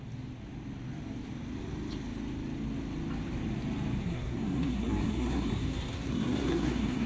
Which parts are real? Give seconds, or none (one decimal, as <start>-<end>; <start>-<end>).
0.0-4.0